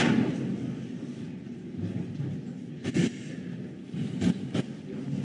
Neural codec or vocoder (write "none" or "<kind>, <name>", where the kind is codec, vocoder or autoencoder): none